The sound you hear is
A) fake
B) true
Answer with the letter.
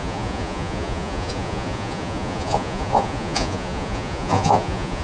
A